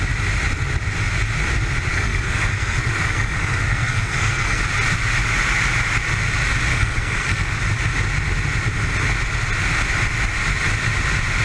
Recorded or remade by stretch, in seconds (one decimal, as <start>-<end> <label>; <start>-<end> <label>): 0.0-1.9 recorded; 1.9-4.6 remade; 4.6-6.7 recorded; 6.7-7.6 remade; 7.6-11.4 recorded